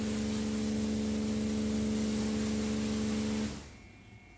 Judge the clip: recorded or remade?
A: recorded